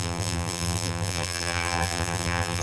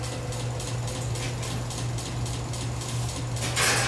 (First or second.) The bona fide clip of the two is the second